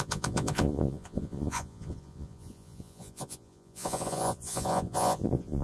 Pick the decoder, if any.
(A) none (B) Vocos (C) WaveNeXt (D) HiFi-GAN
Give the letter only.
B